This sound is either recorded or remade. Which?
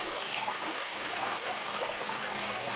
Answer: remade